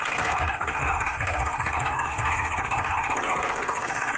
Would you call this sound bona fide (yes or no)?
no